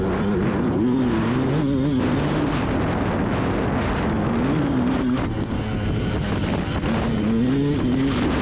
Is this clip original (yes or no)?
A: yes